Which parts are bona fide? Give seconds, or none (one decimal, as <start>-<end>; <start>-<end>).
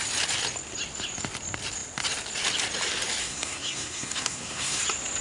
0.0-3.2; 4.8-5.2